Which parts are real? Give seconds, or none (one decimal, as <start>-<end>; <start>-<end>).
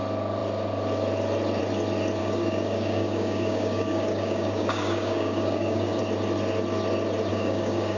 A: 0.0-2.2; 6.0-7.3